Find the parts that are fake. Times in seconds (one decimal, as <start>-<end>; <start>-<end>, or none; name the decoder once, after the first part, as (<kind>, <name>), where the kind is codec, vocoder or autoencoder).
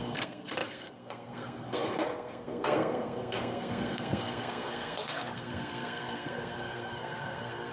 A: 0.0-7.7 (codec, SNAC)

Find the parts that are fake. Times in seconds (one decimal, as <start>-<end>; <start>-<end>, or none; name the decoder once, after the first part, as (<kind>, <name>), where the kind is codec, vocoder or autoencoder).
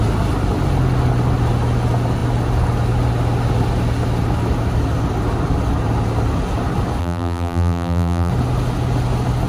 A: 7.0-8.3 (vocoder, BigVGAN v2)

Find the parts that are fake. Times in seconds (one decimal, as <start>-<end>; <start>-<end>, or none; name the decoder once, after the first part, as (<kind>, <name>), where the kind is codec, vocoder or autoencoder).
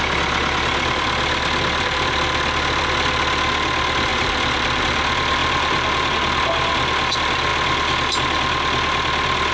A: 0.7-2.9 (vocoder, BigVGAN v2); 4.1-4.8; 5.4-6.1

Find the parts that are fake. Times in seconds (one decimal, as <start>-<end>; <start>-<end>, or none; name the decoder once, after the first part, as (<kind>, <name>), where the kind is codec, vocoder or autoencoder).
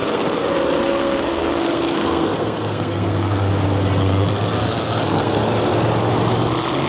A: 0.0-3.5 (codec, SNAC); 4.0-5.5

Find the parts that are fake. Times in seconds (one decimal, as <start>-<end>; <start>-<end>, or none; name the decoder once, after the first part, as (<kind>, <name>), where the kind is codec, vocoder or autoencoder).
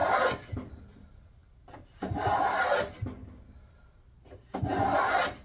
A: none